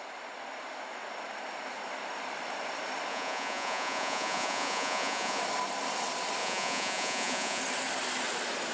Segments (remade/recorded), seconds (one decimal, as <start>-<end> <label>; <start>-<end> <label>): 0.0-3.1 recorded; 3.1-5.4 remade; 5.4-6.4 recorded; 6.4-7.6 remade; 7.6-8.7 recorded